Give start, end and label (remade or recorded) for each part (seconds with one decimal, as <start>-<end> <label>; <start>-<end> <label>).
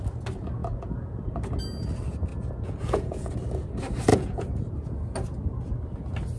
0.0-0.6 recorded; 0.6-1.3 remade; 1.3-2.3 recorded; 2.3-3.3 remade; 3.3-4.1 recorded; 4.1-4.6 remade; 4.6-6.4 recorded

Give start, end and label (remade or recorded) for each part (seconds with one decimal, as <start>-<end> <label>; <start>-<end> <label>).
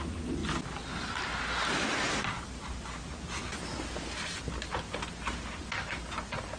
0.0-6.6 recorded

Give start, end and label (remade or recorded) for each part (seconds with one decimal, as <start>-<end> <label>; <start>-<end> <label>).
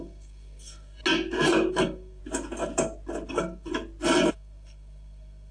0.0-1.0 remade; 1.0-1.7 recorded; 1.7-2.2 remade; 2.2-3.3 recorded; 3.3-3.7 remade; 3.7-4.3 recorded; 4.3-5.5 remade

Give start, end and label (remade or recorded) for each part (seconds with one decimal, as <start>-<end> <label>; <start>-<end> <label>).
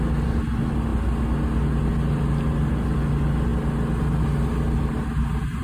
0.0-5.6 recorded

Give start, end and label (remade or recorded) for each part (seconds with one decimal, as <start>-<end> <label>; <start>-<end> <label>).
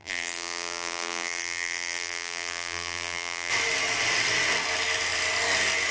0.0-3.5 remade; 3.5-5.9 recorded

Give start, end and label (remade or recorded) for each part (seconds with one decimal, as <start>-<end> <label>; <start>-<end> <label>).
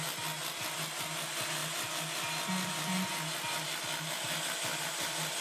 0.0-5.4 recorded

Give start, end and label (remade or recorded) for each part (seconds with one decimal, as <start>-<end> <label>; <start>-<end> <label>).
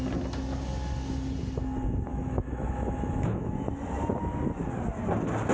0.0-2.1 recorded; 2.1-3.7 remade; 3.7-5.5 recorded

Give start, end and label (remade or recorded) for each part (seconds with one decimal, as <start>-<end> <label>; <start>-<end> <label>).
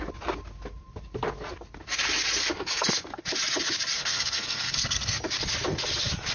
0.0-2.4 recorded; 2.4-3.2 remade; 3.2-4.0 recorded; 4.0-5.2 remade; 5.2-6.3 recorded